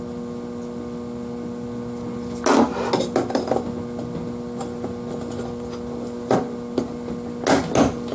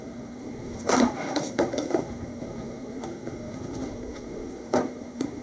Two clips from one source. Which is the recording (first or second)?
first